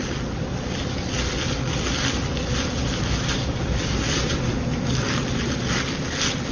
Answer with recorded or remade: recorded